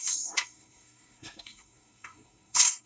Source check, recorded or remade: remade